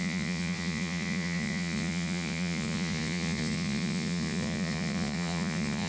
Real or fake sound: fake